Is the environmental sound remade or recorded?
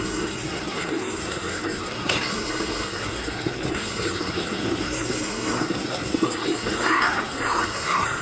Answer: remade